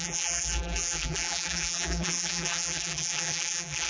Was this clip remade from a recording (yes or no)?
yes